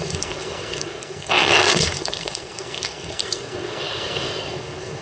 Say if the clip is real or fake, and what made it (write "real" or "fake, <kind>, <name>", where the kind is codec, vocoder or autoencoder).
fake, codec, SNAC